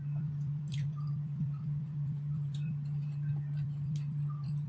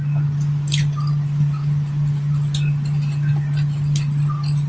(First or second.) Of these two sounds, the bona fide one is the second